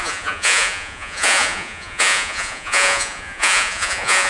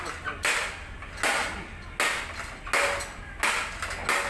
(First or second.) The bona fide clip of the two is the second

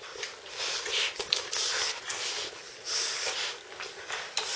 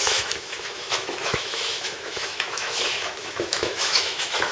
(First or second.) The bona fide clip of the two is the first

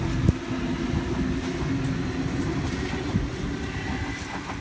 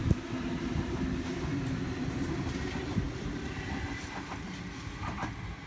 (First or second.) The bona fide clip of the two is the first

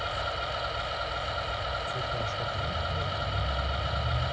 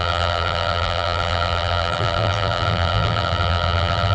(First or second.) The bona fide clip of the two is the first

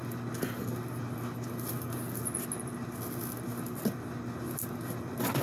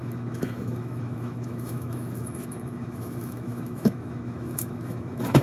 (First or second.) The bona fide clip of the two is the first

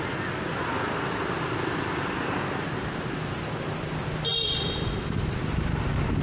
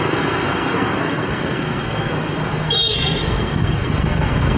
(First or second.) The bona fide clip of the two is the first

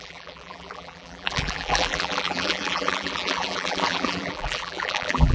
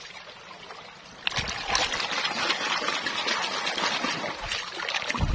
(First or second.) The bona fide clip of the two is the second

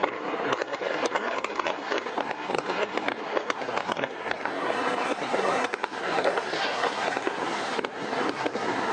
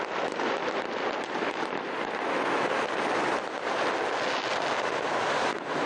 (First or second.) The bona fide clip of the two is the second